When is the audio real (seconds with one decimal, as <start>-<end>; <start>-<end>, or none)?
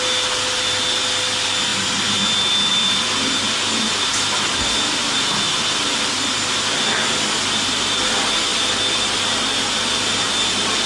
0.0-10.9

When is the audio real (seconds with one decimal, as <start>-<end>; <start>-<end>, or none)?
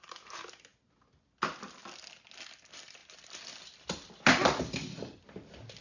0.0-5.8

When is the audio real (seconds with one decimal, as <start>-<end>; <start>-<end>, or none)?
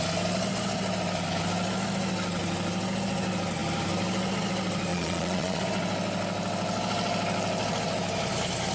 0.0-4.9; 5.6-8.7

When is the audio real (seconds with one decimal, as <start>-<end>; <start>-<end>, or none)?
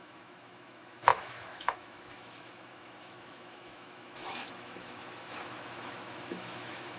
none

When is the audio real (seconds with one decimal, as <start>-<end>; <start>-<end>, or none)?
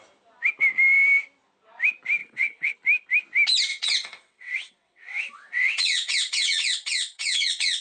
0.0-2.2; 2.7-3.7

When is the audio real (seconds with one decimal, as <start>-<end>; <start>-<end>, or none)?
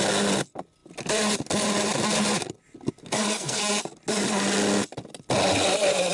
0.0-3.0; 3.6-6.1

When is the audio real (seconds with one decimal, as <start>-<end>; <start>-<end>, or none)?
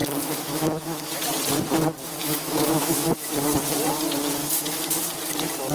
1.1-2.2; 3.3-4.4; 5.1-5.7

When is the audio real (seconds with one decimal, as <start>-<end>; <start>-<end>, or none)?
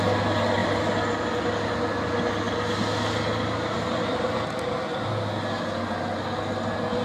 0.0-7.0